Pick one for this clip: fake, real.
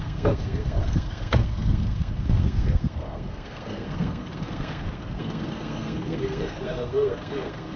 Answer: fake